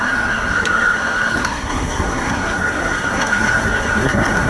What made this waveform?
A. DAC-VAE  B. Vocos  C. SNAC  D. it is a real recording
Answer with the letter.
C